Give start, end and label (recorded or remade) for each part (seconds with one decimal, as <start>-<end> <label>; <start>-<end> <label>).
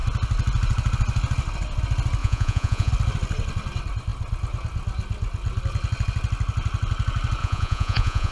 0.0-2.2 recorded; 2.2-2.9 remade; 2.9-7.4 recorded; 7.4-8.3 remade